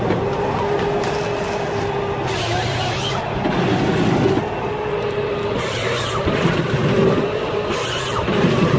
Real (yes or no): yes